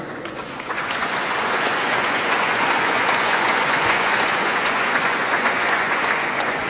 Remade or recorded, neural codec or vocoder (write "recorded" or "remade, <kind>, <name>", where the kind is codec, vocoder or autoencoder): remade, vocoder, Vocos